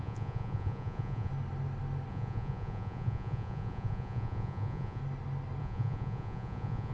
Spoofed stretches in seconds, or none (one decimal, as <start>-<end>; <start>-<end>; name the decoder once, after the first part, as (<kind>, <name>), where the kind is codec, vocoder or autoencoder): 0.0-1.3 (vocoder, Vocos); 2.1-5.0; 5.6-6.9